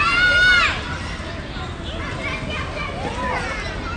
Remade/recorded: recorded